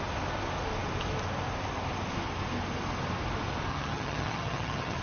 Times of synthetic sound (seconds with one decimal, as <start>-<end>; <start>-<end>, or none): 3.7-5.0